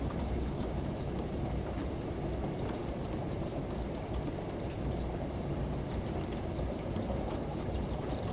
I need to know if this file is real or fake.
fake